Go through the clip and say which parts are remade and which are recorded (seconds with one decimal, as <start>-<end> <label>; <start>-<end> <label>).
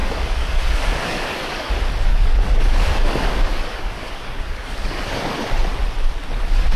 0.0-1.7 remade; 1.7-2.1 recorded; 2.1-5.3 remade; 5.3-6.8 recorded